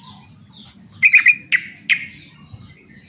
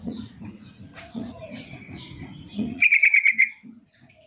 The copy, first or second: second